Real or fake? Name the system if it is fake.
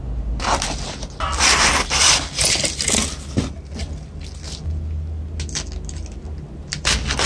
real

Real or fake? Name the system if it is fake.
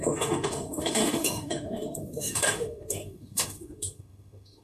fake, autoencoder, DAC-VAE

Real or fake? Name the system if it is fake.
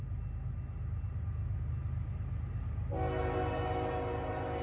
real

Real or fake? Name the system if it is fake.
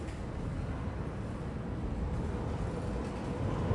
real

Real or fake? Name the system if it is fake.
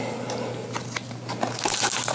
real